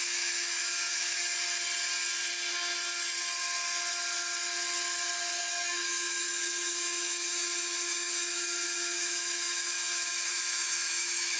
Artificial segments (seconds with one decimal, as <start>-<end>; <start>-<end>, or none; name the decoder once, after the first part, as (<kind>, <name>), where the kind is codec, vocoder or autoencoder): 0.0-1.2 (autoencoder, DAC-VAE); 5.4-11.4